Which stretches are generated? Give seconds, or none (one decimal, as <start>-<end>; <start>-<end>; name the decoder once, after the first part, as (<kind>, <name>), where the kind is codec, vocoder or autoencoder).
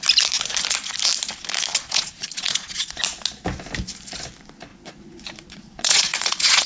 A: 1.7-3.0 (vocoder, Vocos); 4.7-6.7